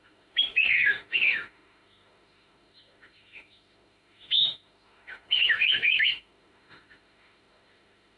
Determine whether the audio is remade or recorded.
remade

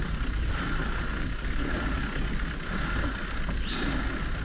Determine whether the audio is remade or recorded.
recorded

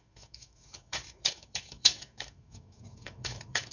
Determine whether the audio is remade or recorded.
remade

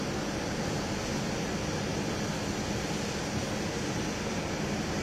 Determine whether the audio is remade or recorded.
recorded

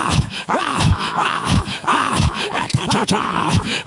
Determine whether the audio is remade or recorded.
remade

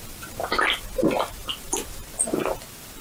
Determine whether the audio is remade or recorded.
recorded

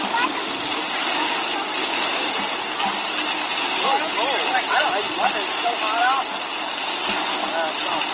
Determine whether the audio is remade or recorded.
recorded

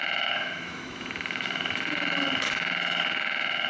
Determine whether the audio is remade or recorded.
remade